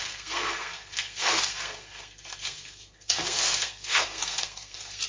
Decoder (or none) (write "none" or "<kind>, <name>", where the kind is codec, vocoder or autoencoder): codec, SNAC